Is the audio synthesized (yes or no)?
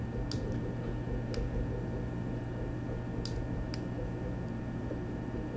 no